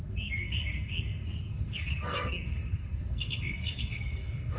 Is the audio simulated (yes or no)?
yes